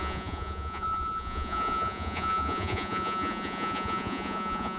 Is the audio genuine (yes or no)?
no